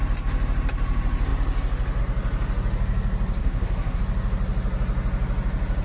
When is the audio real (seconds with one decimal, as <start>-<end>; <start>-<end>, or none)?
0.0-3.4; 4.0-5.8